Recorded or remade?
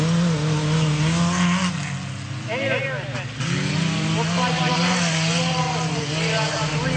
recorded